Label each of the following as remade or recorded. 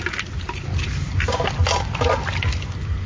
recorded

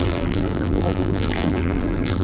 remade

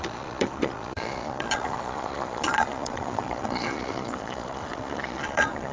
remade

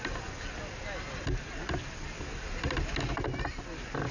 recorded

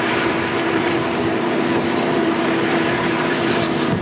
remade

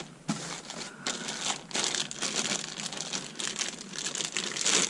recorded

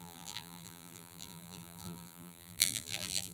remade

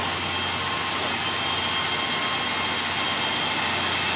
recorded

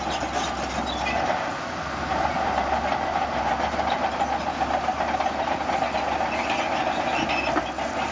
recorded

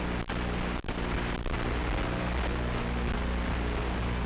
recorded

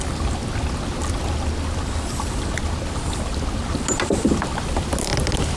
recorded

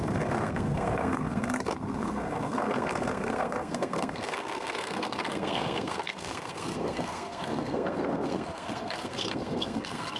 remade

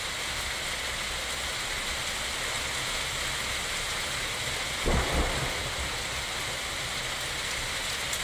recorded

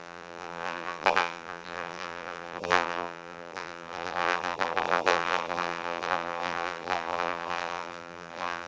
remade